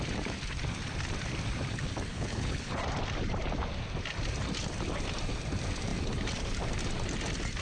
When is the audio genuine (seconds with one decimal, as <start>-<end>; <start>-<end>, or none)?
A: 0.0-2.1; 2.8-7.6